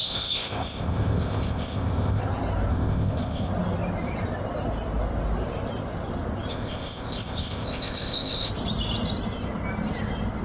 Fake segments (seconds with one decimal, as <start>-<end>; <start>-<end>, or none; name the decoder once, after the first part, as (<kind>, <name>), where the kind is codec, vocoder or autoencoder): 0.0-2.2 (codec, ZipCodec); 2.7-3.5; 6.5-8.5